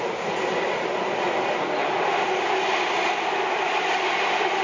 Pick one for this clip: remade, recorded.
recorded